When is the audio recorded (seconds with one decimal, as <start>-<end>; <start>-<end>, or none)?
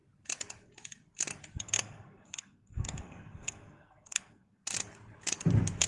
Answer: 0.0-1.6; 4.6-5.9